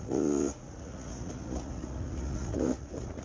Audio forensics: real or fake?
fake